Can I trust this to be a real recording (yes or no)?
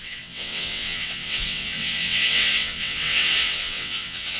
no